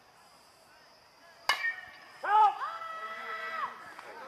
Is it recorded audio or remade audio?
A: recorded